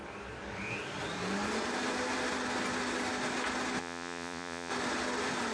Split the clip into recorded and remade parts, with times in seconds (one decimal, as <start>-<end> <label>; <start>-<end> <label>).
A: 0.0-3.8 recorded; 3.8-4.7 remade; 4.7-5.5 recorded